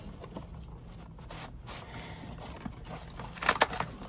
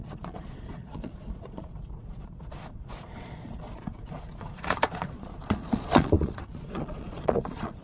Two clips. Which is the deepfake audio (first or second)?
second